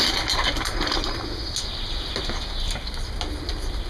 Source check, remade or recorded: recorded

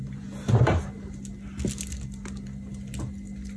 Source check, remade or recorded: recorded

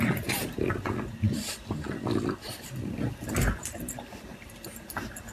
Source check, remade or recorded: recorded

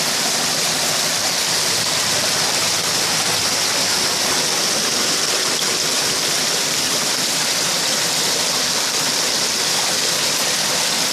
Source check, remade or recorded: recorded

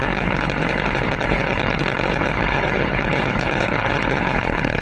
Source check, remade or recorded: remade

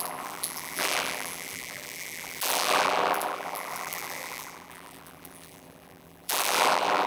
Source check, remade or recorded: remade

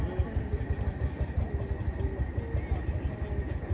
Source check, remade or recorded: recorded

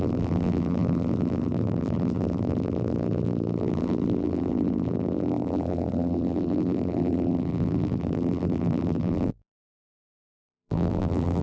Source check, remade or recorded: remade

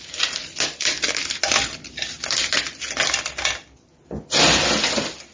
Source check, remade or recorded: recorded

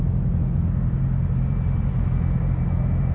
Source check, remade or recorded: recorded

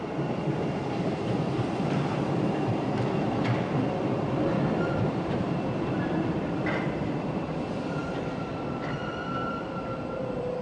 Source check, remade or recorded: remade